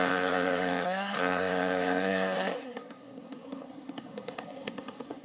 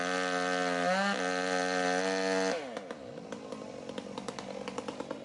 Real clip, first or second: second